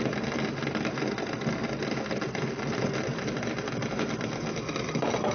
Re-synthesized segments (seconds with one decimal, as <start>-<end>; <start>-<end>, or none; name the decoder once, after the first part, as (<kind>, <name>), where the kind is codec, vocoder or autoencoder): none